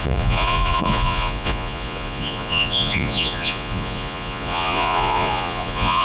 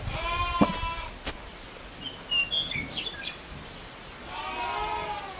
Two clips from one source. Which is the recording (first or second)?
second